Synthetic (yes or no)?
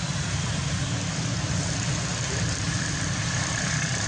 yes